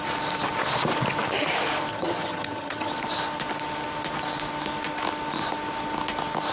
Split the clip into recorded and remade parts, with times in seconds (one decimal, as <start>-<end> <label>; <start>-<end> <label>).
0.0-1.9 recorded; 1.9-2.9 remade; 2.9-6.5 recorded